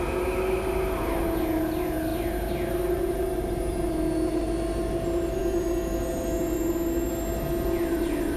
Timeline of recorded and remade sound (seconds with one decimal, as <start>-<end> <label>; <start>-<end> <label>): 0.0-8.4 recorded